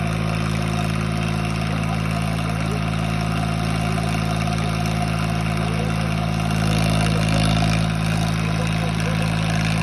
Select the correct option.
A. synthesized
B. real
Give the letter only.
B